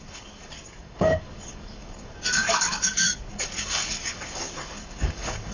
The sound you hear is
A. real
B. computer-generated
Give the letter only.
B